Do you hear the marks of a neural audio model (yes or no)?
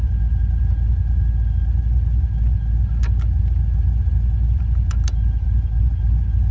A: no